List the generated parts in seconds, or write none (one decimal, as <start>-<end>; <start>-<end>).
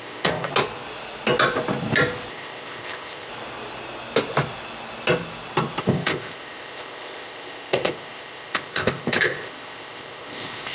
0.0-0.5; 2.3-3.3; 5.8-10.7